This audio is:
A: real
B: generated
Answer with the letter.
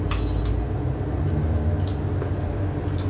A